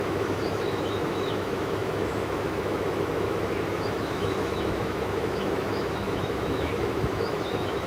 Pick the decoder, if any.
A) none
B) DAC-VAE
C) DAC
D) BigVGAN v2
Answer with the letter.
B